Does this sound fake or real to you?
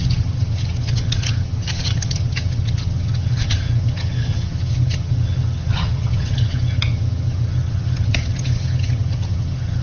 fake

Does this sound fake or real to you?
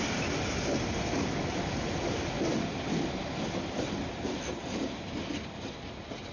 real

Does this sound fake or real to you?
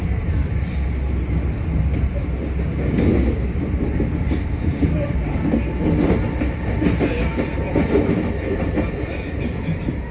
real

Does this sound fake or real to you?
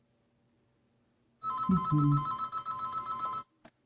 real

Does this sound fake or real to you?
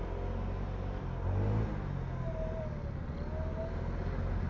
real